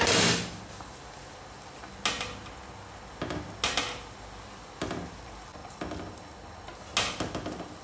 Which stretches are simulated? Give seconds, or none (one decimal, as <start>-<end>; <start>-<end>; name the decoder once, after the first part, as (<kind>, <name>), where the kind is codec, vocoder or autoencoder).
none

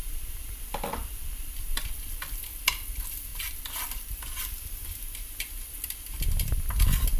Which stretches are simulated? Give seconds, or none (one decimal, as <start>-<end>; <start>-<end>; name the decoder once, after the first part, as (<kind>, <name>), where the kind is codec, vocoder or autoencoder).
0.0-2.4 (vocoder, BigVGAN v2); 3.3-4.1

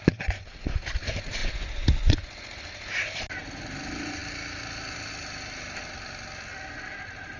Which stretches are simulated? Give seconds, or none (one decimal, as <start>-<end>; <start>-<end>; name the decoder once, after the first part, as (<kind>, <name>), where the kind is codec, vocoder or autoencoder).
1.4-2.7 (vocoder, Vocos)

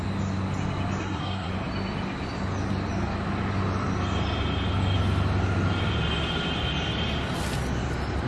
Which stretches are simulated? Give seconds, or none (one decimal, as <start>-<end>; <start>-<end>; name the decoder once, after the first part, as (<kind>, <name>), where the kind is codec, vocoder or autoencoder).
1.0-1.5 (codec, SNAC)

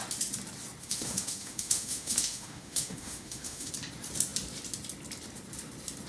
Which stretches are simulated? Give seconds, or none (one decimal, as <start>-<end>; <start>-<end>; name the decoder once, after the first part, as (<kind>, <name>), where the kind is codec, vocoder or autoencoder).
0.8-3.7 (autoencoder, DAC-VAE)

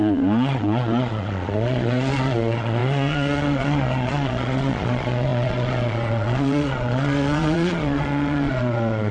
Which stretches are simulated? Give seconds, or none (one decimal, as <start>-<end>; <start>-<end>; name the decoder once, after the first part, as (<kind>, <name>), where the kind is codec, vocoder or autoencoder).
0.0-9.1 (vocoder, Vocos)

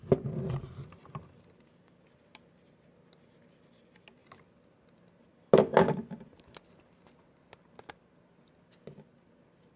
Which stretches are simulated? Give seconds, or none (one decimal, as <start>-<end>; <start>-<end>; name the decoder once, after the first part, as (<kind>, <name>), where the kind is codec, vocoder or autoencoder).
none

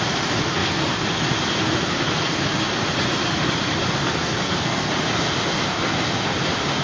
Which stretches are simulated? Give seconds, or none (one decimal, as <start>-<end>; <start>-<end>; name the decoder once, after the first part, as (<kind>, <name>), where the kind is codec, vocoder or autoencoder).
4.0-4.9 (codec, SNAC)